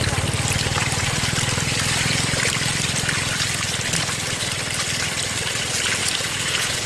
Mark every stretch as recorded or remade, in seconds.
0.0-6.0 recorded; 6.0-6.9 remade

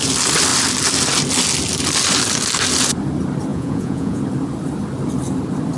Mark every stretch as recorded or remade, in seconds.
0.0-3.5 recorded; 3.5-4.2 remade; 4.2-5.8 recorded

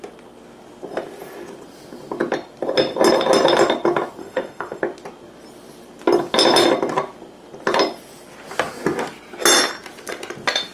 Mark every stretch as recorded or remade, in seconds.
0.0-4.2 recorded; 4.2-4.8 remade; 4.8-10.7 recorded

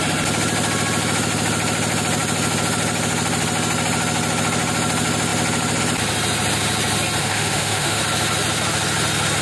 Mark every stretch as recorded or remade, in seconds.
0.0-7.2 recorded; 7.2-8.0 remade; 8.0-9.4 recorded

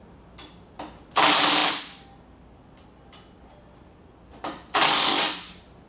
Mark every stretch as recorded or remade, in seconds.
0.0-5.9 recorded

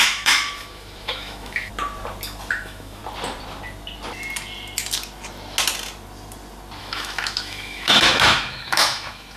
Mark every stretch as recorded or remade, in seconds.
0.0-1.7 remade; 1.7-2.5 recorded; 2.5-3.0 remade; 3.0-6.8 recorded; 6.8-9.4 remade

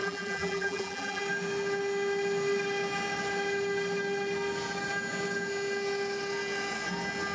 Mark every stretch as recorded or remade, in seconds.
0.0-1.2 remade; 1.2-7.3 recorded

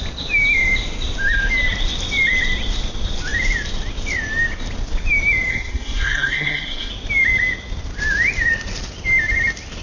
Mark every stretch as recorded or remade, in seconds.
0.0-5.5 recorded; 5.5-6.9 remade; 6.9-9.8 recorded